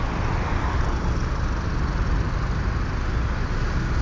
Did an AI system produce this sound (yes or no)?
no